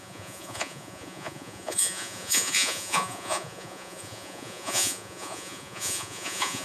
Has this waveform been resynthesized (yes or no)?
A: yes